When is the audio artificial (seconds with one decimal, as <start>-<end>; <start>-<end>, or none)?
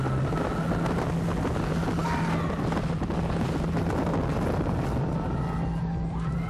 none